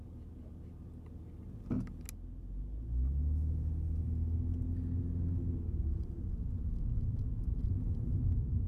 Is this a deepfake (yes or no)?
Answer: no